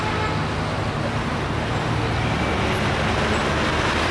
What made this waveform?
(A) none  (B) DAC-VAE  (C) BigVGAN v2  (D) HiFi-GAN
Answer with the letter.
A